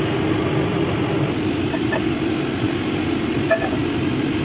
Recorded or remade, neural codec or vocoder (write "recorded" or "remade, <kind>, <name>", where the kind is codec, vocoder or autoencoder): recorded